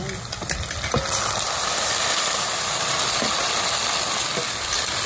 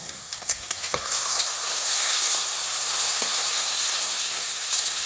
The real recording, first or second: first